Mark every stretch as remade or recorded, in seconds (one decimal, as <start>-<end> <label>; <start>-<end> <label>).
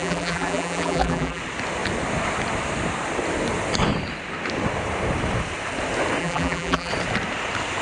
0.0-1.4 remade; 1.4-6.2 recorded; 6.2-6.9 remade; 6.9-7.8 recorded